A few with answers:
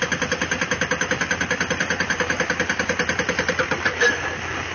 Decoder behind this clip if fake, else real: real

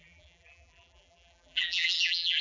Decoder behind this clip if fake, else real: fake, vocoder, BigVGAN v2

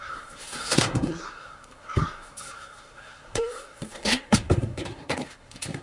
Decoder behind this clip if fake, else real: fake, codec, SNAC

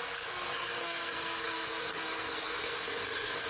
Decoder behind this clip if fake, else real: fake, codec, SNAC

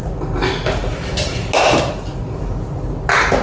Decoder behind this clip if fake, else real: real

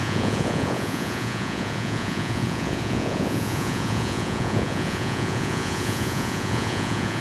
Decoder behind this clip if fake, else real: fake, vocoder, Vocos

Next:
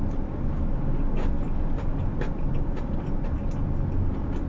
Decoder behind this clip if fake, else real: real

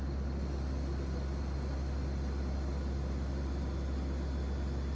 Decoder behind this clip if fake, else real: real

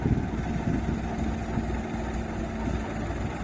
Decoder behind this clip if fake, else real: real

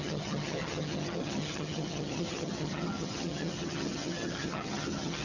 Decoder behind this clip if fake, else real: fake, vocoder, HiFi-GAN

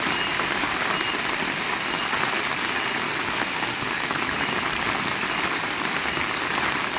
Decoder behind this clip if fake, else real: real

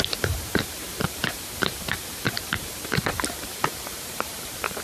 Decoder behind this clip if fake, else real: fake, vocoder, BigVGAN v2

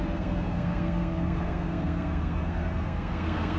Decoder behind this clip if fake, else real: fake, codec, SNAC